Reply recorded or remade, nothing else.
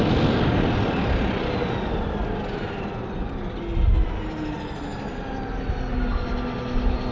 recorded